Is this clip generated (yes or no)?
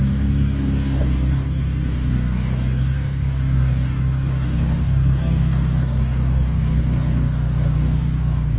yes